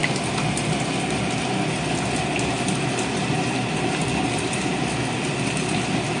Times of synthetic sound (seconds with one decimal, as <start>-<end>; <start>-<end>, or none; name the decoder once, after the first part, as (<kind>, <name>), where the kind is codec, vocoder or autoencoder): none